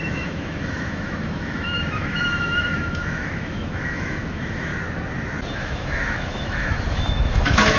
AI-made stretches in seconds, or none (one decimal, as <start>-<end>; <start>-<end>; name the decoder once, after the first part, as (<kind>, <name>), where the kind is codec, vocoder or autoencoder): 0.0-4.7 (autoencoder, DAC-VAE); 5.6-7.8